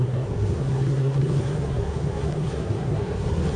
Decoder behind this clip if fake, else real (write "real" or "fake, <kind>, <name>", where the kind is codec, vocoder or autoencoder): fake, codec, SNAC